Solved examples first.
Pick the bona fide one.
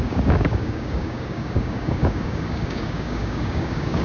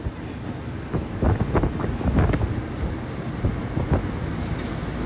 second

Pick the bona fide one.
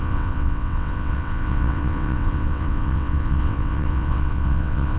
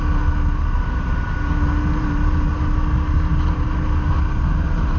second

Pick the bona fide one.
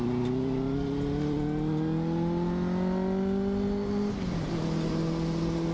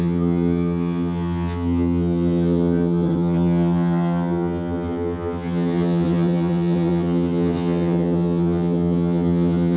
first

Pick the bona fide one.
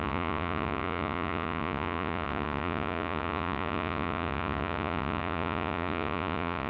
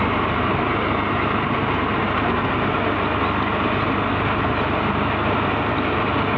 second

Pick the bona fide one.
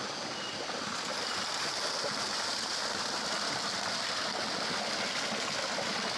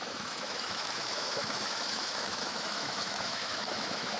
first